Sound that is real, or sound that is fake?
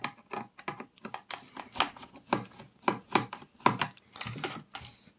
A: real